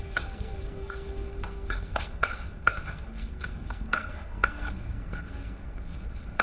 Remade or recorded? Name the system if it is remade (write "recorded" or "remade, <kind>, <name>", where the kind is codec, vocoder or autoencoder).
remade, codec, SNAC